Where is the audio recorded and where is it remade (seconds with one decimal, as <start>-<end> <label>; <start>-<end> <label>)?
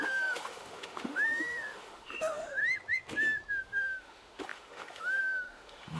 0.0-2.6 remade; 2.6-3.6 recorded; 3.6-6.0 remade